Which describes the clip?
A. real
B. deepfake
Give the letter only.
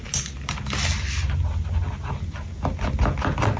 A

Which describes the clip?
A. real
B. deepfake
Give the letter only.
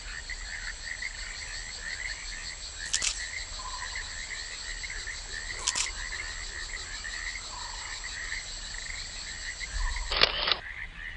A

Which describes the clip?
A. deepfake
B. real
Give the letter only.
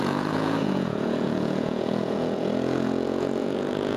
A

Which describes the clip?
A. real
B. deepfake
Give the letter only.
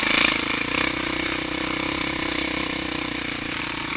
A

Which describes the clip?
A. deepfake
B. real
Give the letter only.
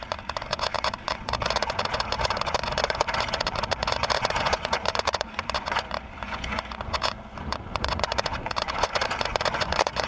A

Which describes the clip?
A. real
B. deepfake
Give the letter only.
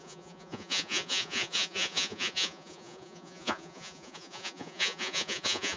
B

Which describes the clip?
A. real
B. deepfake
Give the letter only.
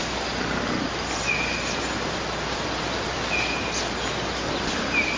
A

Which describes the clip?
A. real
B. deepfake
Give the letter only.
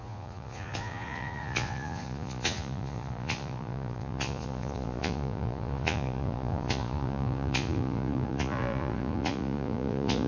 B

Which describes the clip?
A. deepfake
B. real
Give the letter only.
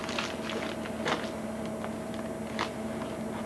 B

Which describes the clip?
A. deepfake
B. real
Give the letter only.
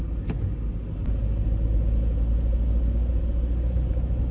B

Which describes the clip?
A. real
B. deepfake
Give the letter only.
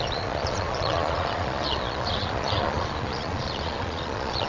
B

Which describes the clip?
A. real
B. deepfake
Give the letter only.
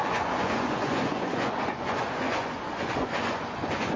B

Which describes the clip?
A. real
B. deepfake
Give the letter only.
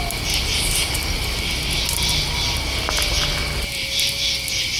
A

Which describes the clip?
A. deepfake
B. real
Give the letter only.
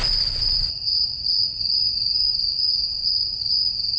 B